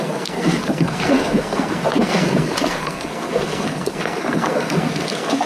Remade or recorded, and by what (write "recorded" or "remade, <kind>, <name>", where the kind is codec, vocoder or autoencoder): remade, codec, SNAC